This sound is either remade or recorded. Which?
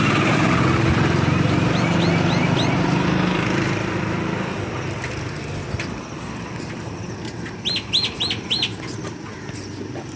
recorded